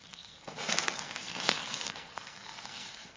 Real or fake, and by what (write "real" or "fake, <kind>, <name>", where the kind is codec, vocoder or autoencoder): fake, codec, SNAC